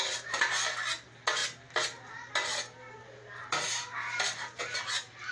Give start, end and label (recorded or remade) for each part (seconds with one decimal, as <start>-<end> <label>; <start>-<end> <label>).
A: 0.0-5.3 recorded